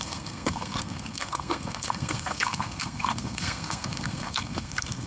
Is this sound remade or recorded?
remade